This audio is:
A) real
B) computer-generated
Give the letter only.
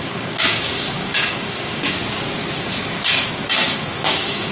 B